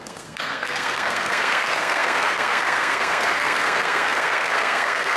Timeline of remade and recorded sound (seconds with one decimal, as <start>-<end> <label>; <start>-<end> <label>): 0.0-5.2 remade